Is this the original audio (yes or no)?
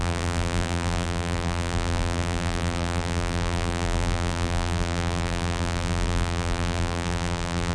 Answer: no